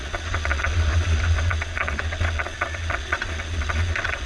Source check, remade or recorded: remade